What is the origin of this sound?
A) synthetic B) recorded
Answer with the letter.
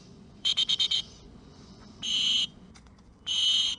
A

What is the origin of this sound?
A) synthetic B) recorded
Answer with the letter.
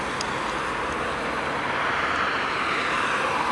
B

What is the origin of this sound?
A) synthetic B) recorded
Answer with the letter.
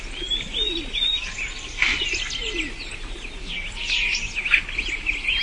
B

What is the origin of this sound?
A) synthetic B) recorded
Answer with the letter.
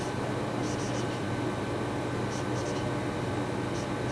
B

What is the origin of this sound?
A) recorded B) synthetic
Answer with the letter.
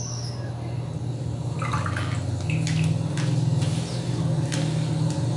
A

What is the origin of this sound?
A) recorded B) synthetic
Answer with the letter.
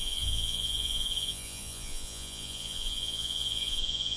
B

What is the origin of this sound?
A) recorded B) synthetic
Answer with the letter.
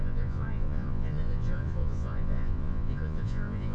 B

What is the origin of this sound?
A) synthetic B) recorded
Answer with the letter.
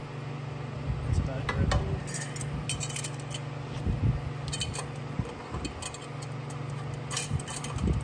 B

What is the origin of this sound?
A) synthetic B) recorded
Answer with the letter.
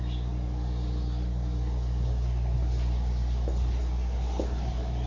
B